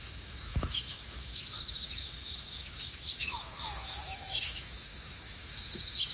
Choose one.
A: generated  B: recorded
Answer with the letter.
A